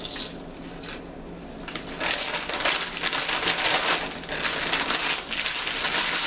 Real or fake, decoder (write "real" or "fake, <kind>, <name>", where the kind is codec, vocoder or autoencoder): real